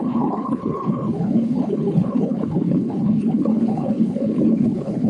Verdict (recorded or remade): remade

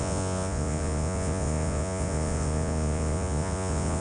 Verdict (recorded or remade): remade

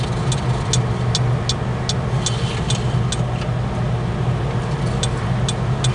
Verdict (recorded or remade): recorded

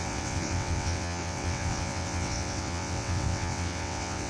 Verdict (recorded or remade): remade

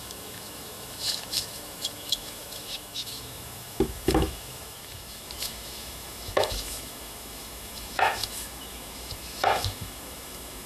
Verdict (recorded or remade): remade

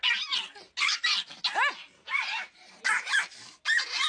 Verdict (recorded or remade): recorded